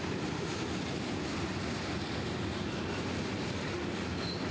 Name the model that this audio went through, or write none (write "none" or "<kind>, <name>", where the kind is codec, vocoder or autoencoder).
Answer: none